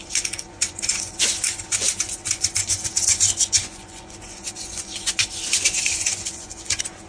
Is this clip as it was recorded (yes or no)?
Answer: no